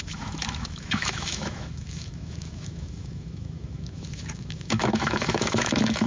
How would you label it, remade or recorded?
remade